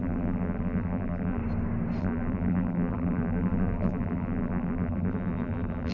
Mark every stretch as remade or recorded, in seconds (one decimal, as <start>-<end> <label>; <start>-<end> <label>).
0.0-1.4 remade; 1.4-2.0 recorded; 2.0-5.9 remade

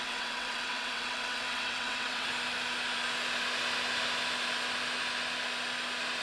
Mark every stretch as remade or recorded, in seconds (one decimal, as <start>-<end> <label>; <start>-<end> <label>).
0.0-2.3 remade; 2.3-6.2 recorded

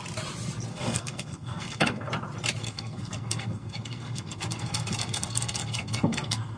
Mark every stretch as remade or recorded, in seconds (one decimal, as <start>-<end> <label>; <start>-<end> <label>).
0.0-0.7 recorded; 0.7-2.1 remade; 2.1-2.6 recorded; 2.6-6.6 remade

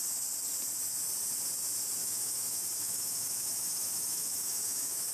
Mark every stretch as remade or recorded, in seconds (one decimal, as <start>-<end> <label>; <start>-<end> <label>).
0.0-2.0 recorded; 2.0-5.1 remade

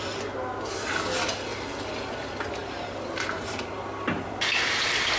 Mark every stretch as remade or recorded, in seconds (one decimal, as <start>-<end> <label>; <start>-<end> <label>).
0.0-2.6 recorded; 2.6-3.7 remade; 3.7-5.2 recorded